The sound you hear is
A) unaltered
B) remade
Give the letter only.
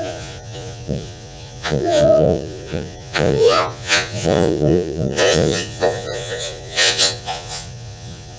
B